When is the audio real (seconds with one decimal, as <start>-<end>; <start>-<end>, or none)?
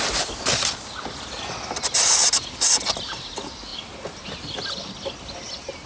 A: 0.0-5.9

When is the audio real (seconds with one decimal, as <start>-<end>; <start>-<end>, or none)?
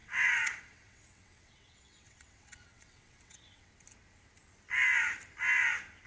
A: 3.7-6.1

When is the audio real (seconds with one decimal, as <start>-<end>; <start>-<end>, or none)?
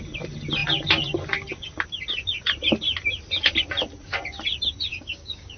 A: 0.0-4.9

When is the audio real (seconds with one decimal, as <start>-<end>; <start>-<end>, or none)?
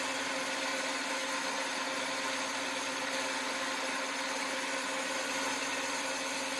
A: 0.0-6.6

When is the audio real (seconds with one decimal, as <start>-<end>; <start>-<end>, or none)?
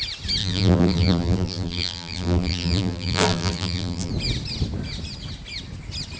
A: 0.0-0.4; 4.1-6.2